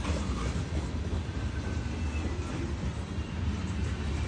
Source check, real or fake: real